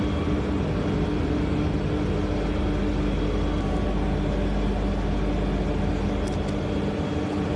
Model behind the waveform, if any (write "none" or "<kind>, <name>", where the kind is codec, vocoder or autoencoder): none